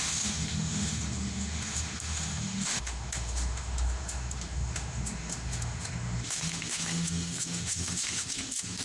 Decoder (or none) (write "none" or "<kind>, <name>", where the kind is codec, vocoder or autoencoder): autoencoder, DAC-VAE